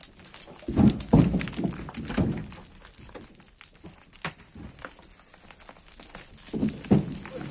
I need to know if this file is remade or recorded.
recorded